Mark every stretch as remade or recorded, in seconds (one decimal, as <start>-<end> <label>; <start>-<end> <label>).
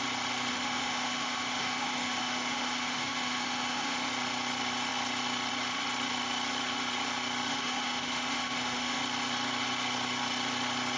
0.0-0.5 recorded; 0.5-4.1 remade; 4.1-7.5 recorded; 7.5-9.0 remade; 9.0-11.0 recorded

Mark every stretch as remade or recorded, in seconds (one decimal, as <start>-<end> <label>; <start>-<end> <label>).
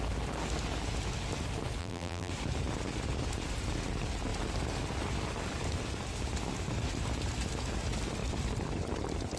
0.0-1.8 recorded; 1.8-2.3 remade; 2.3-9.4 recorded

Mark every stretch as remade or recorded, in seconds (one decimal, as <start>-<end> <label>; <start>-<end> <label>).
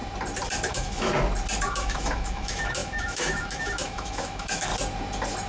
0.0-0.7 recorded; 0.7-1.1 remade; 1.1-1.7 recorded; 1.7-4.7 remade; 4.7-5.5 recorded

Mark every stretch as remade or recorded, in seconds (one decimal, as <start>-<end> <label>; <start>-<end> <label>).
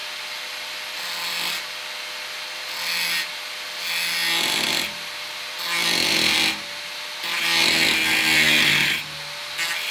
0.0-9.9 recorded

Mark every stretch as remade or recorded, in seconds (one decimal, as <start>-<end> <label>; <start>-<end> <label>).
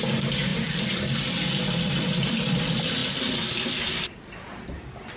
0.0-5.2 recorded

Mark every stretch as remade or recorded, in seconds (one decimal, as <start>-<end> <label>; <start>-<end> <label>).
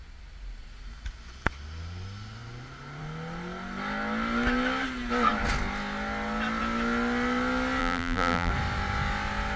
0.0-7.8 recorded; 7.8-8.5 remade; 8.5-9.6 recorded